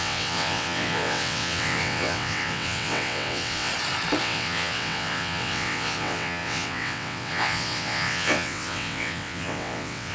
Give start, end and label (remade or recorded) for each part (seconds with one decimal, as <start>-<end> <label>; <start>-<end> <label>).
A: 0.0-3.7 remade; 3.7-4.2 recorded; 4.2-10.1 remade

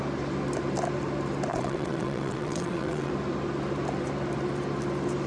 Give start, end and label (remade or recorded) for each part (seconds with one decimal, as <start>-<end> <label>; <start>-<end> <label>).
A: 0.0-1.5 recorded; 1.5-3.1 remade; 3.1-5.3 recorded

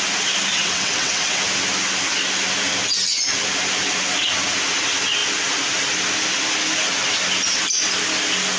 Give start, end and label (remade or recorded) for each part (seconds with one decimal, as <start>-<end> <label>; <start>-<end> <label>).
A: 0.0-0.5 recorded; 0.5-1.4 remade; 1.4-8.6 recorded

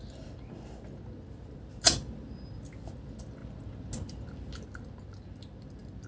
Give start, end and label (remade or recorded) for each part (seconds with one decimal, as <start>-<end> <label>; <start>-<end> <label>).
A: 0.0-6.1 recorded

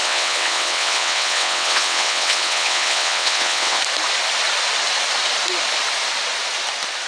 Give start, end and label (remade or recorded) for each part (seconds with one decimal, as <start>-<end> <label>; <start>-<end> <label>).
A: 0.0-3.8 remade; 3.8-7.1 recorded